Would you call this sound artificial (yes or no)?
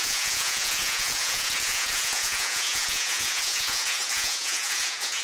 yes